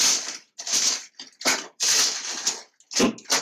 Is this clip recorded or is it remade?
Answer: recorded